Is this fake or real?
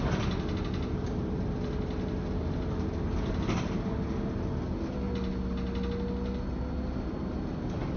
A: real